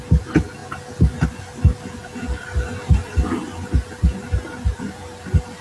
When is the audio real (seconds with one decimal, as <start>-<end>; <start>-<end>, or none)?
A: 0.0-5.6